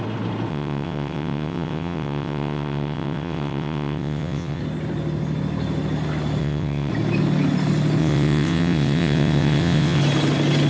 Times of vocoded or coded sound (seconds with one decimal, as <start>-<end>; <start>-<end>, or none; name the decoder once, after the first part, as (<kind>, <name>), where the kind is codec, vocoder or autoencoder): 0.5-4.6 (vocoder, WaveNeXt); 6.4-6.9; 8.0-10.0